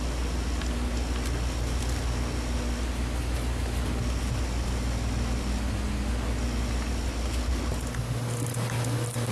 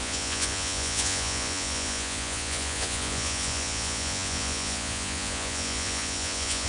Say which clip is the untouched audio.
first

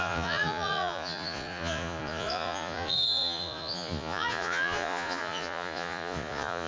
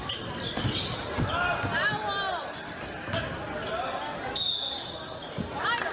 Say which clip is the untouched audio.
second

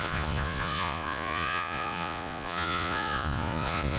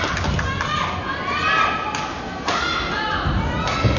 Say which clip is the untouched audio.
second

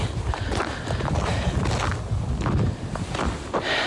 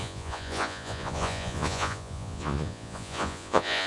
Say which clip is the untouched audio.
first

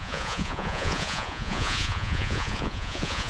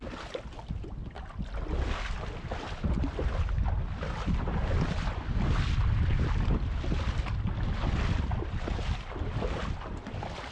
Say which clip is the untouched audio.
second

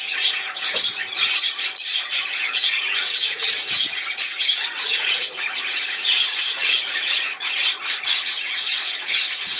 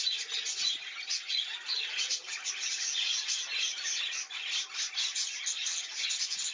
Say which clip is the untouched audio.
second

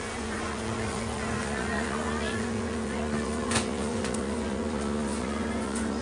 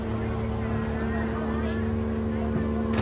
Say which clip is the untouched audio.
second